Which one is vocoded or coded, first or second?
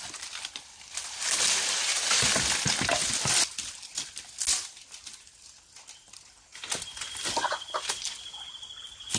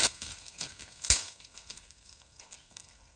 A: second